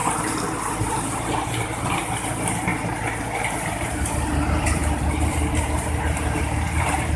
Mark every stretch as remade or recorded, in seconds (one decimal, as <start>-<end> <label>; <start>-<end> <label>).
0.0-0.7 recorded; 0.7-2.7 remade; 2.7-3.7 recorded; 3.7-7.2 remade